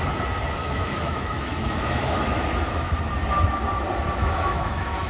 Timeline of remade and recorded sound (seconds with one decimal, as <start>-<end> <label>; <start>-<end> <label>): 0.0-0.6 recorded; 0.6-3.0 remade; 3.0-4.2 recorded; 4.2-5.1 remade